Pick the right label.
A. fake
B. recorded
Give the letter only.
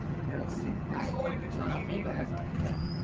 A